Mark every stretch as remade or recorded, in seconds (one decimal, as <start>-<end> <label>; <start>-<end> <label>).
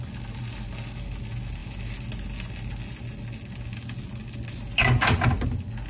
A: 0.0-5.9 recorded